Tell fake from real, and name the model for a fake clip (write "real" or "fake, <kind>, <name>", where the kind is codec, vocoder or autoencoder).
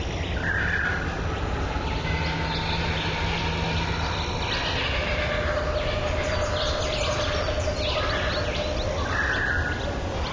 real